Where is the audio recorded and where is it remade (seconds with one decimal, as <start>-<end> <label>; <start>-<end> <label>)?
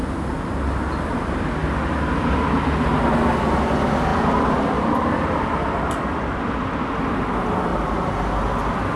0.0-4.1 recorded; 4.1-6.9 remade; 6.9-7.7 recorded; 7.7-8.6 remade; 8.6-9.0 recorded